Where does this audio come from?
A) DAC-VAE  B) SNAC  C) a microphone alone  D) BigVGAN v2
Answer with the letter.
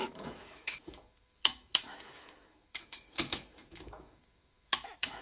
A